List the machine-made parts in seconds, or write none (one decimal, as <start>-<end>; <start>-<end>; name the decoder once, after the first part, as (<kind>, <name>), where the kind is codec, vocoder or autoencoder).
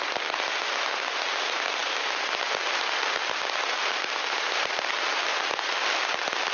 none